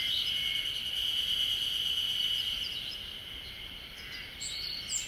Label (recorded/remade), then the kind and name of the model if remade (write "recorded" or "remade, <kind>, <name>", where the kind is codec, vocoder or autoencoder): recorded